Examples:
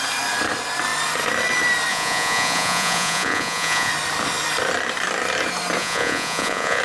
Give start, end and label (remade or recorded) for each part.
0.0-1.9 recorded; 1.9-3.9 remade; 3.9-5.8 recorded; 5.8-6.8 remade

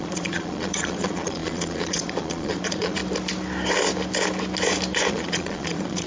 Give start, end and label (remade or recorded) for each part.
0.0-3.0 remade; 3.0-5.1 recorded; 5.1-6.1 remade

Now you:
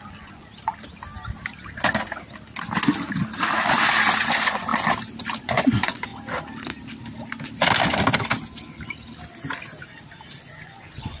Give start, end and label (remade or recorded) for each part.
0.0-0.5 remade; 0.5-4.3 recorded; 4.3-4.7 remade; 4.7-5.4 recorded; 5.4-6.1 remade; 6.1-10.4 recorded; 10.4-11.2 remade

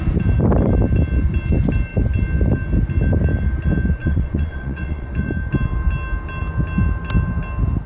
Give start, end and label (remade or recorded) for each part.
0.0-4.0 recorded; 4.0-5.3 remade; 5.3-7.9 recorded

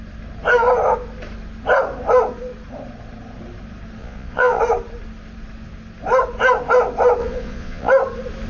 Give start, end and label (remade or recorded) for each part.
0.0-4.0 recorded; 4.0-4.6 remade; 4.6-7.2 recorded; 7.2-7.9 remade; 7.9-8.5 recorded

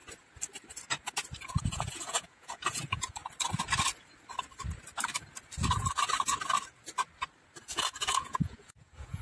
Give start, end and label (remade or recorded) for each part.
0.0-1.4 recorded; 1.4-3.2 remade; 3.2-7.6 recorded; 7.6-9.2 remade

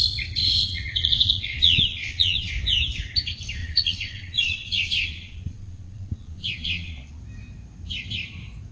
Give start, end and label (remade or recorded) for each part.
0.0-0.4 recorded; 0.4-2.5 remade; 2.5-3.6 recorded; 3.6-7.2 remade; 7.2-8.7 recorded

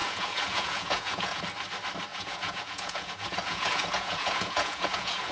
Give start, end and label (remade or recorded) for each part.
0.0-1.4 remade; 1.4-2.1 recorded; 2.1-5.3 remade